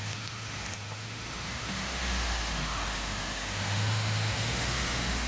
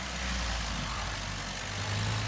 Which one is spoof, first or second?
first